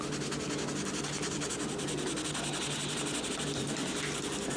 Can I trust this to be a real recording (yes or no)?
yes